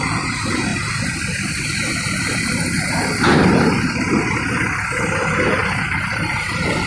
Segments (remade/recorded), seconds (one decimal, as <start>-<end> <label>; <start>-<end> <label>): 0.0-6.9 recorded